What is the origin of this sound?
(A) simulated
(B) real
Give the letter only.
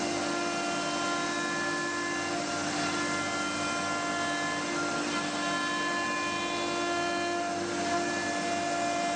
B